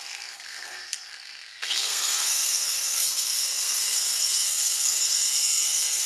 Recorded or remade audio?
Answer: remade